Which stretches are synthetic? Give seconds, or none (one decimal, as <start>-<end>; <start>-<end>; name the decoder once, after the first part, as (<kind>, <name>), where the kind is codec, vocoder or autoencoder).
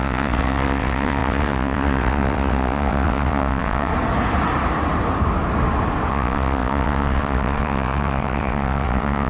0.0-3.9 (vocoder, WaveNeXt); 6.1-9.3